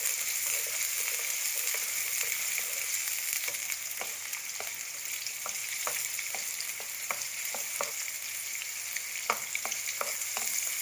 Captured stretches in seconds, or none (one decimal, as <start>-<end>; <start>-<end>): 0.0-5.6; 7.9-10.8